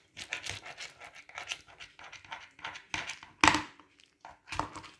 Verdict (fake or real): real